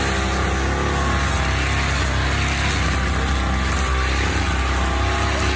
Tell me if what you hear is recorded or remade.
recorded